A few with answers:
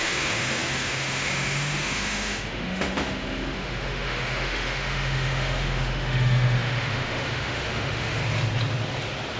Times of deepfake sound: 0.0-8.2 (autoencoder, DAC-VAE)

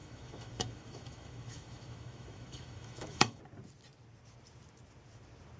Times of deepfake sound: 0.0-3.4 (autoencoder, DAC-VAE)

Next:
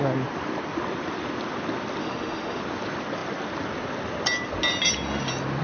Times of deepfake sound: 2.0-2.6 (autoencoder, DAC-VAE)